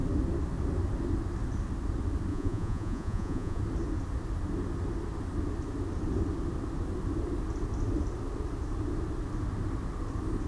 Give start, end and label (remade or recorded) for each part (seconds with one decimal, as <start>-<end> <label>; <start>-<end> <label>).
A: 0.0-2.3 recorded; 2.3-3.6 remade; 3.6-10.5 recorded